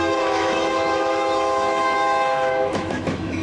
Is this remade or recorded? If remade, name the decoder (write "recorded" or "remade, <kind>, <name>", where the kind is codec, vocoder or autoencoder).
remade, autoencoder, DAC-VAE